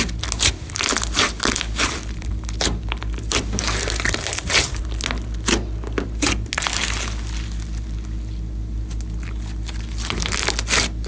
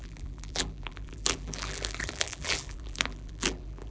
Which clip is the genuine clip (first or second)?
first